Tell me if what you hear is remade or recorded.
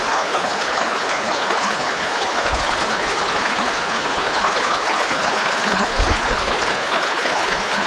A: remade